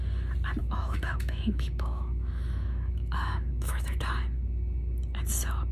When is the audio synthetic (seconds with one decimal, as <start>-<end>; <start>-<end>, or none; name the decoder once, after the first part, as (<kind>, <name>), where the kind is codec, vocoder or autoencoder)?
0.6-4.0 (autoencoder, DAC-VAE)

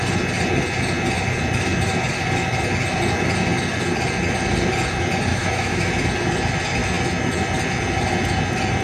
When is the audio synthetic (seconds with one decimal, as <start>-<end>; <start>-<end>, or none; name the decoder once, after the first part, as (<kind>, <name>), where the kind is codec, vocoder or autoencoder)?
5.3-5.9 (autoencoder, DAC-VAE)

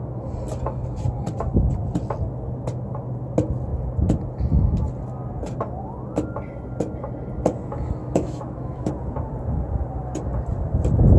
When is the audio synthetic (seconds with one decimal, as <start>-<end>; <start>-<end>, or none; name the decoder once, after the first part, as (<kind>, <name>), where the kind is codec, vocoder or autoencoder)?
8.0-8.9 (autoencoder, DAC-VAE)

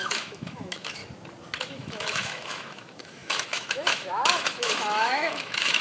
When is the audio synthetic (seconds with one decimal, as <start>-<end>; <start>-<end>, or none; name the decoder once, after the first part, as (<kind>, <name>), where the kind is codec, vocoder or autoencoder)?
0.0-1.0 (autoencoder, DAC-VAE); 1.6-5.8

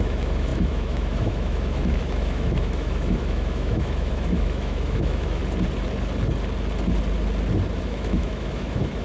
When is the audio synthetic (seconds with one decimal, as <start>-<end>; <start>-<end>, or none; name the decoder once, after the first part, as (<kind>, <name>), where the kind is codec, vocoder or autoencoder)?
0.0-5.4 (autoencoder, DAC-VAE); 7.8-9.0

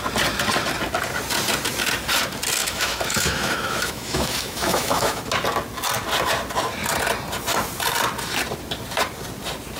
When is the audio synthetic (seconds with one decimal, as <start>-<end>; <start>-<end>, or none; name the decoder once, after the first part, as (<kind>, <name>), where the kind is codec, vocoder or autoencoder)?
2.6-5.2 (autoencoder, DAC-VAE)

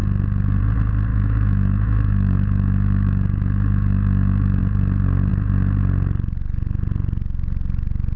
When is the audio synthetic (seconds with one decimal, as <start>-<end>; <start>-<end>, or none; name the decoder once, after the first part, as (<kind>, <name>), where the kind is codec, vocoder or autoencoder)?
1.1-4.6 (autoencoder, DAC-VAE)